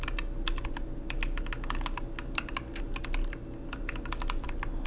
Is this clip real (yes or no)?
yes